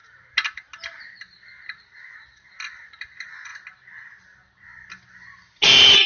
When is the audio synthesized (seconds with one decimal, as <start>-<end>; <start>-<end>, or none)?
none

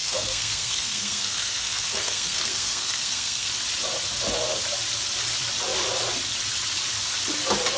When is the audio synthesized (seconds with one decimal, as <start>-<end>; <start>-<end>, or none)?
0.0-3.5

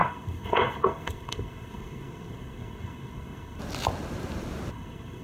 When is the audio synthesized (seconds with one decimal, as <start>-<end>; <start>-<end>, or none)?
0.0-3.6; 4.7-5.2

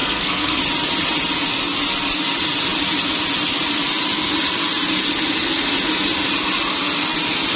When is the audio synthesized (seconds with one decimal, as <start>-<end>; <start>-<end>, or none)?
0.0-0.6

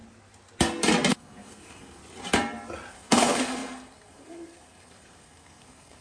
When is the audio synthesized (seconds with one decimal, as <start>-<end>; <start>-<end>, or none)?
1.1-2.0; 2.9-6.0

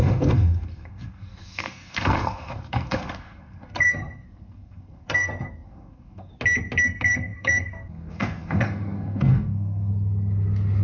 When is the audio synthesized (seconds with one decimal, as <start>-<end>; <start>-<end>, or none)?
0.0-6.3; 6.8-9.9

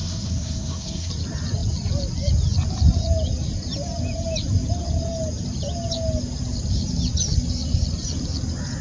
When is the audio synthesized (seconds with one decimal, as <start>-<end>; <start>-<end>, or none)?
0.0-1.1